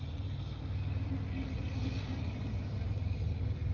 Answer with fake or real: real